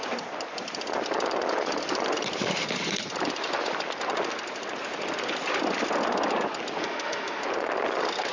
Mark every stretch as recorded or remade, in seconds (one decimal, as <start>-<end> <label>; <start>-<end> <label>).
0.0-6.8 recorded; 6.8-7.4 remade; 7.4-8.3 recorded